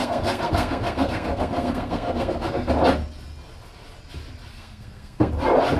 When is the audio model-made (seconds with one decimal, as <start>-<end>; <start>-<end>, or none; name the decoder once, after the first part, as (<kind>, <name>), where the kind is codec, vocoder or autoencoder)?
0.0-2.7 (codec, SNAC); 4.5-5.3